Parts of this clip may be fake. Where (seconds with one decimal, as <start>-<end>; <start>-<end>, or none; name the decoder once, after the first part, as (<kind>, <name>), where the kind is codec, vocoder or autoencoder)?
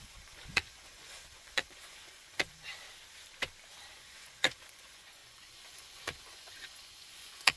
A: 0.0-2.7 (vocoder, Vocos); 3.9-7.6